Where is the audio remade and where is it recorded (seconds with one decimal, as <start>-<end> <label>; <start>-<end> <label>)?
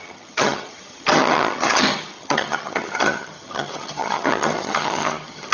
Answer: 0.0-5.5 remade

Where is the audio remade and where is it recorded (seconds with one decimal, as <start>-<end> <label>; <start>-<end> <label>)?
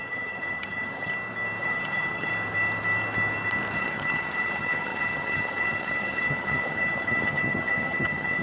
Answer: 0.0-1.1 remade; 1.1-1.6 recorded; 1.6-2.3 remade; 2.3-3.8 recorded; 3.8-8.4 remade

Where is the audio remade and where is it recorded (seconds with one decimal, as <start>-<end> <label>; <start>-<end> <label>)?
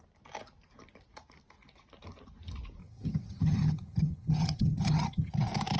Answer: 0.0-2.8 recorded; 2.8-5.3 remade; 5.3-5.8 recorded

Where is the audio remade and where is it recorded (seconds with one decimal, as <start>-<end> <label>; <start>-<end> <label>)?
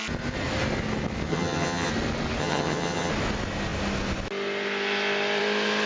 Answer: 0.0-1.3 recorded; 1.3-1.9 remade; 1.9-2.4 recorded; 2.4-3.1 remade; 3.1-5.9 recorded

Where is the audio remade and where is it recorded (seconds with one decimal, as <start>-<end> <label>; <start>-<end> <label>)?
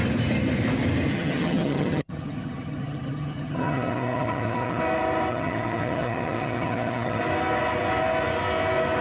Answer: 0.0-1.1 recorded; 1.1-4.8 remade; 4.8-5.3 recorded; 5.3-7.2 remade; 7.2-9.0 recorded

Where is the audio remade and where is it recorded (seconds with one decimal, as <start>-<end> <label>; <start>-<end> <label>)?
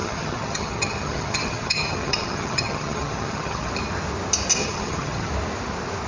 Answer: 0.0-3.7 remade; 3.7-4.6 recorded; 4.6-5.3 remade; 5.3-6.1 recorded